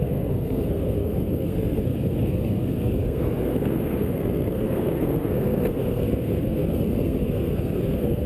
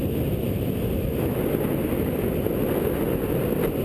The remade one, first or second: first